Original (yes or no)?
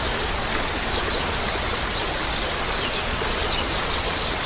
yes